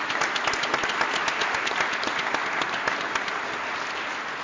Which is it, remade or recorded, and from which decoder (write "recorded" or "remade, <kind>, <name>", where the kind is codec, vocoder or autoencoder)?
recorded